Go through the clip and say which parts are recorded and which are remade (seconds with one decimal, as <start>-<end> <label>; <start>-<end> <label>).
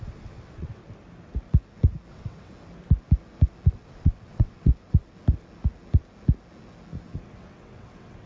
0.0-0.8 remade; 0.8-2.1 recorded; 2.1-2.5 remade; 2.5-3.8 recorded; 3.8-4.7 remade; 4.7-7.3 recorded; 7.3-8.3 remade